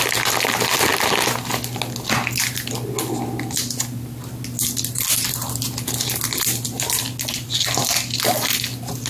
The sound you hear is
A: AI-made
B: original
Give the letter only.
B